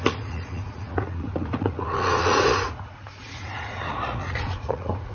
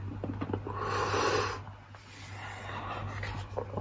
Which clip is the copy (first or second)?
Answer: first